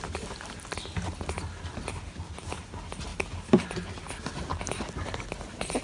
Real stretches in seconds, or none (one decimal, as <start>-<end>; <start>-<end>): 0.0-5.8